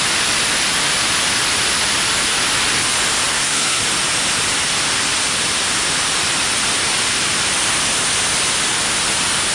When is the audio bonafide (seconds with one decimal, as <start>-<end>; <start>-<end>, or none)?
0.0-3.3; 3.8-9.5